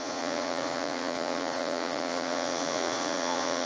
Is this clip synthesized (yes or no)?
yes